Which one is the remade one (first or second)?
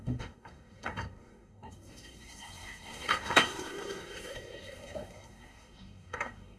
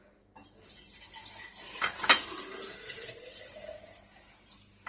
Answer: first